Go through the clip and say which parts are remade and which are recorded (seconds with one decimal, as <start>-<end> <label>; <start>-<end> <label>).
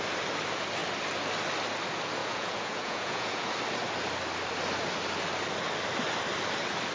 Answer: 0.0-2.2 recorded; 2.2-3.5 remade; 3.5-6.9 recorded